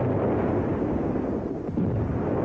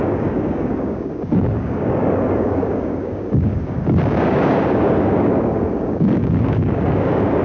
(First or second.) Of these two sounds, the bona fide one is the first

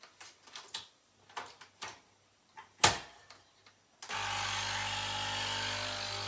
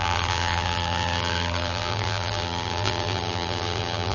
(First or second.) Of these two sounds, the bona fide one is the first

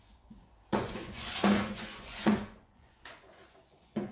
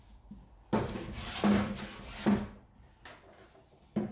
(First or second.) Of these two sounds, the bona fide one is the second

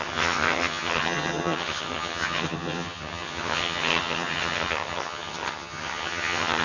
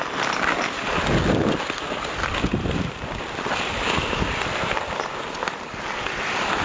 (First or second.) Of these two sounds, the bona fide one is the second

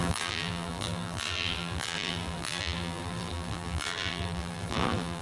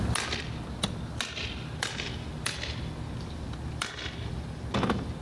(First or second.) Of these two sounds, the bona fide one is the second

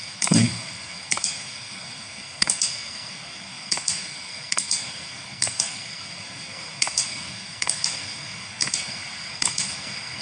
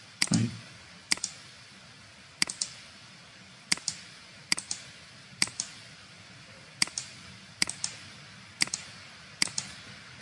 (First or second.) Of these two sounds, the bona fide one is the second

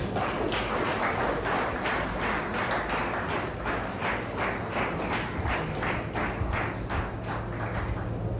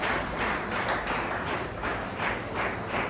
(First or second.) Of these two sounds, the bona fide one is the first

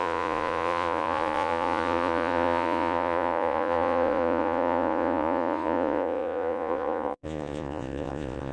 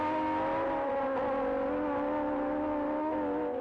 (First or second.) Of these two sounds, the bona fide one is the second